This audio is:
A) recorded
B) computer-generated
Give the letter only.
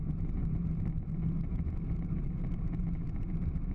B